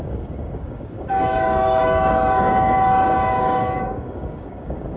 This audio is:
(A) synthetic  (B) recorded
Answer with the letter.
A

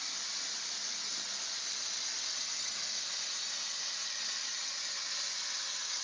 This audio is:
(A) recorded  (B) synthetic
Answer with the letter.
A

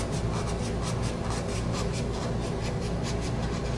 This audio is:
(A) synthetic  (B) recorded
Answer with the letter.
B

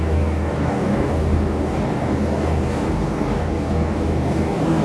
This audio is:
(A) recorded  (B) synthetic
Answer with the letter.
B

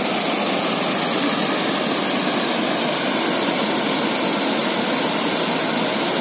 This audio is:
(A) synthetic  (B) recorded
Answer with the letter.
B